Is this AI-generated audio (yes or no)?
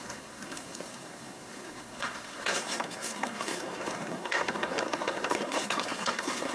yes